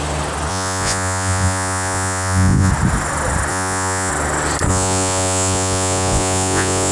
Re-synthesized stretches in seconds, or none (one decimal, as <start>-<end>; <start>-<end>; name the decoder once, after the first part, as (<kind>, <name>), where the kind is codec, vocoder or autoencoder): 0.5-2.7 (vocoder, Vocos); 3.5-4.1; 4.7-6.9